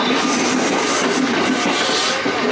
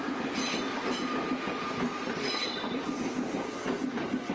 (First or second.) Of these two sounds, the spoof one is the second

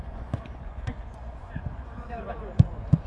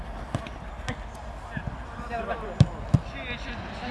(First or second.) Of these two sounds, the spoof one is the first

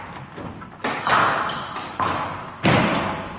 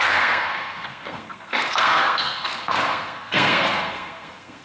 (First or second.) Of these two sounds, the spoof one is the second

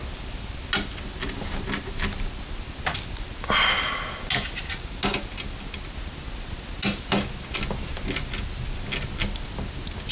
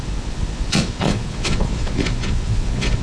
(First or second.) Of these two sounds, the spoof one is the second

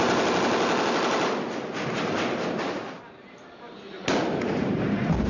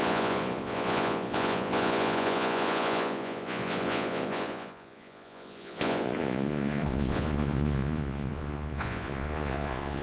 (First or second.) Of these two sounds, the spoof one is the second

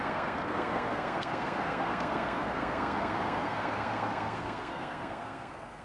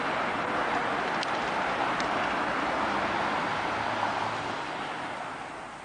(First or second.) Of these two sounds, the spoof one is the first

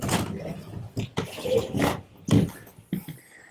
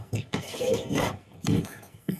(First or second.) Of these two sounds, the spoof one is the second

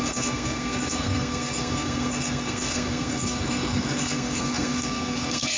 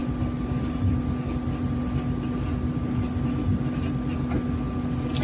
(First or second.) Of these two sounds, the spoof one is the first